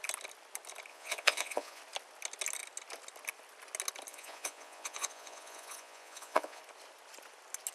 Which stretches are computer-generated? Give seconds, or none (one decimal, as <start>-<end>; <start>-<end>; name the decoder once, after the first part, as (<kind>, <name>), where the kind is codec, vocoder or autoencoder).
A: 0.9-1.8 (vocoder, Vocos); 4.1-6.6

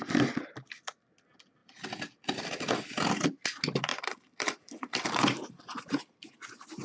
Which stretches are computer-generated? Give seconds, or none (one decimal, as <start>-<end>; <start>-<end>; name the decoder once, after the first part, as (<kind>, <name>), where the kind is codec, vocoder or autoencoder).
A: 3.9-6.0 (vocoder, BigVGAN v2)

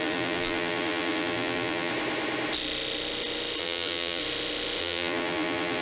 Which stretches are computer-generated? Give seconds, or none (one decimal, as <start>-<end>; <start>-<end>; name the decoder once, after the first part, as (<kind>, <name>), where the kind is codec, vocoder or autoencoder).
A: 0.0-1.9 (vocoder, BigVGAN v2); 3.6-4.2; 4.8-5.8

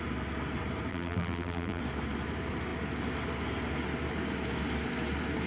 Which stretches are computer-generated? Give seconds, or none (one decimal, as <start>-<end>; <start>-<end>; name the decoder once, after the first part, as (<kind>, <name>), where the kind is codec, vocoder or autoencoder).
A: 0.9-1.8 (vocoder, BigVGAN v2)